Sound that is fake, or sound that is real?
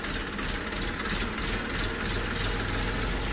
real